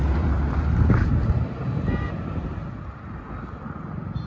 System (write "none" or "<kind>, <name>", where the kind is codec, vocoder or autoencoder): none